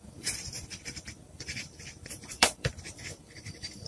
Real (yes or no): no